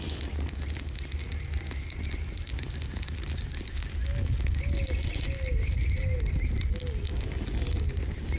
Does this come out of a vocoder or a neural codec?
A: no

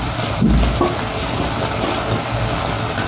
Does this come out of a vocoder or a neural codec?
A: no